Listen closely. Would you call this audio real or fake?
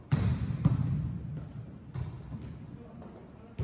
real